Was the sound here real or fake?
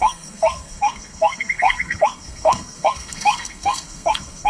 fake